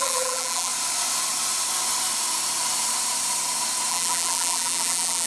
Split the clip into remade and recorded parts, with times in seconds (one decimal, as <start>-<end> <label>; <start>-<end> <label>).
0.0-0.7 remade; 0.7-3.9 recorded; 3.9-5.3 remade